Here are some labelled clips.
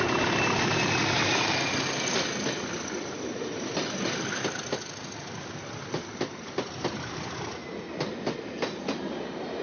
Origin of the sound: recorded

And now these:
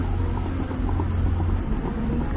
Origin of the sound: recorded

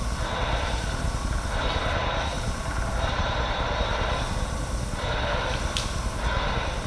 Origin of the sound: recorded